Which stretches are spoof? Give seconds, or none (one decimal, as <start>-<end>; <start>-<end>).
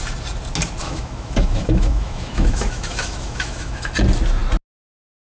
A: 0.8-3.9